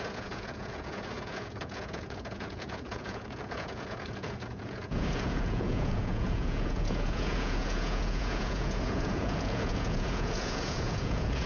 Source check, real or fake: fake